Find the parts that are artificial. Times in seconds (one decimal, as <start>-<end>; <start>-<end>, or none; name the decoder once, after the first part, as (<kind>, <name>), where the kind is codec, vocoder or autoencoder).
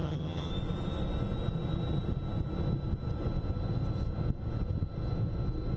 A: 0.0-0.5 (vocoder, HiFi-GAN)